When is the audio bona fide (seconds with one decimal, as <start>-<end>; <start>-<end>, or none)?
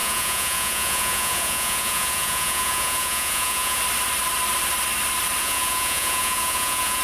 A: 3.8-5.4